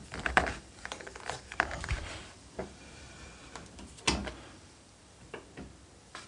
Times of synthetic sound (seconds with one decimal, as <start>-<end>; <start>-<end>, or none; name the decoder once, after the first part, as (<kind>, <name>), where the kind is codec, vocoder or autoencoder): 0.0-3.5 (vocoder, BigVGAN v2); 4.2-6.3